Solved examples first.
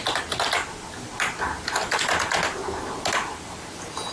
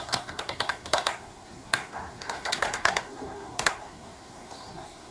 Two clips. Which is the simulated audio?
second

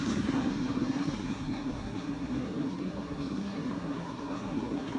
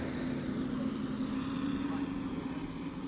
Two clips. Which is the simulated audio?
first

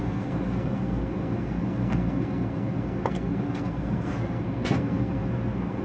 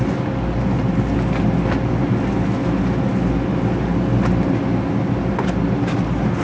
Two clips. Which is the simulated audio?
first